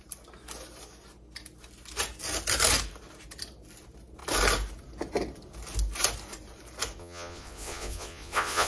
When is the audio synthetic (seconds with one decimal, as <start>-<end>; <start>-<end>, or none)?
7.0-8.7